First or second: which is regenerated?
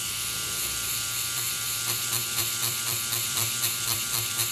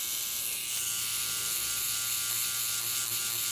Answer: first